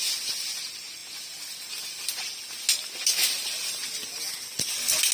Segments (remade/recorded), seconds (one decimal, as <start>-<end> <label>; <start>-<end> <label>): 0.0-5.1 recorded